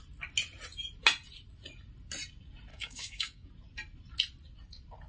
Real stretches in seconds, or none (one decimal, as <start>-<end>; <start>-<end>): 0.0-2.7; 3.5-5.1